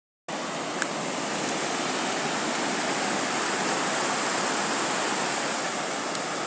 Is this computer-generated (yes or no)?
no